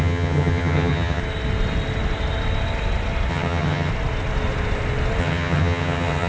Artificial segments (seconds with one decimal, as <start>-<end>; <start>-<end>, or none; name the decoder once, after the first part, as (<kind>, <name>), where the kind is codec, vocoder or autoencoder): 0.0-1.2 (vocoder, HiFi-GAN); 3.3-3.9; 5.2-6.3